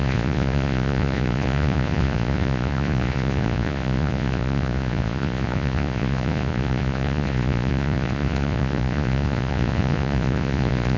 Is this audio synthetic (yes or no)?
yes